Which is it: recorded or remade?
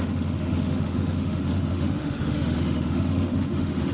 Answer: remade